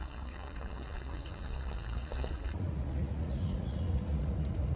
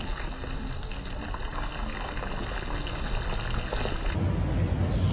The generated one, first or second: first